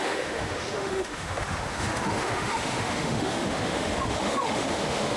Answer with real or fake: fake